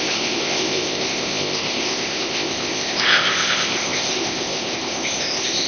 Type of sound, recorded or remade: remade